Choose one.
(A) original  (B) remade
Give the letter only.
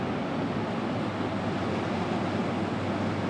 A